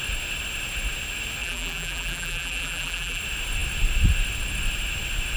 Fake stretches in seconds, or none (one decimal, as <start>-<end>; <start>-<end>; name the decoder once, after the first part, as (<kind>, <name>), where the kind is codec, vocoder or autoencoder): 1.4-3.2 (vocoder, BigVGAN v2)